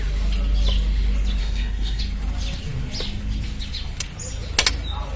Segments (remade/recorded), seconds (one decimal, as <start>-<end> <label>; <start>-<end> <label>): 0.0-1.4 recorded; 1.4-2.0 remade; 2.0-5.2 recorded